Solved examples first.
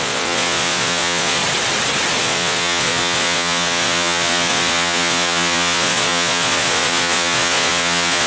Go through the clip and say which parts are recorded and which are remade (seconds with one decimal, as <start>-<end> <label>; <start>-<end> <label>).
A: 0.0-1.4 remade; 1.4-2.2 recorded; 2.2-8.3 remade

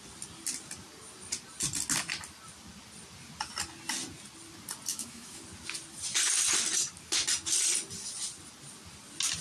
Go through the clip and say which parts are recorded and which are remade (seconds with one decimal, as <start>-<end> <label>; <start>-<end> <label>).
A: 0.0-4.9 recorded; 4.9-5.4 remade; 5.4-9.4 recorded

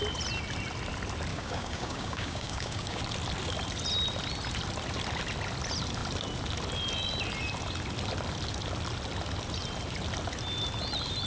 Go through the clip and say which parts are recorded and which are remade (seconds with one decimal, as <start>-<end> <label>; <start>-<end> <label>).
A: 0.0-1.3 recorded; 1.3-3.0 remade; 3.0-11.3 recorded

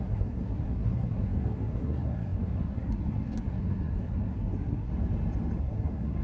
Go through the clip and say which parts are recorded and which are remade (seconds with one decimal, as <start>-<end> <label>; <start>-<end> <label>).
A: 0.0-4.9 remade; 4.9-5.6 recorded; 5.6-6.2 remade

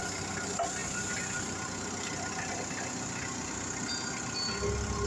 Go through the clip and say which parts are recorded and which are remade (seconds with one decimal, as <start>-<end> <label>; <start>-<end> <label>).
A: 0.0-5.1 recorded

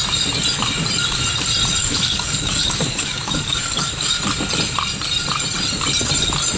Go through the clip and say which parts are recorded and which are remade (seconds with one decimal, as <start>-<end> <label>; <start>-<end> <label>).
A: 0.0-1.8 recorded; 1.8-4.2 remade; 4.2-6.6 recorded